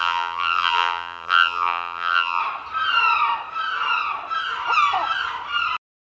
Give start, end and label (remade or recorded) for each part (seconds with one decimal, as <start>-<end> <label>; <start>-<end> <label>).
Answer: 0.0-2.4 remade; 2.4-6.0 recorded